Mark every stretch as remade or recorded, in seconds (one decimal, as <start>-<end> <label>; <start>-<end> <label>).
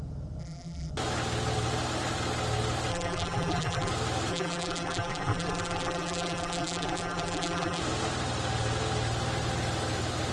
0.0-0.4 recorded; 0.4-0.9 remade; 0.9-2.9 recorded; 2.9-3.9 remade; 3.9-4.3 recorded; 4.3-7.8 remade; 7.8-10.3 recorded